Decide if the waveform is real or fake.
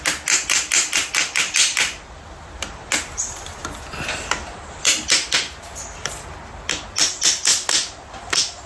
real